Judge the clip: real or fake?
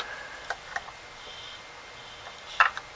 real